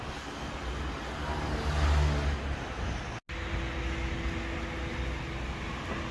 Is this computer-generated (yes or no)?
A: no